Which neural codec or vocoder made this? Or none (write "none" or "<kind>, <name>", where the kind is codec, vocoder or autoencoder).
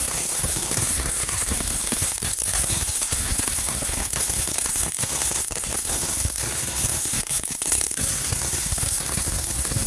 codec, SNAC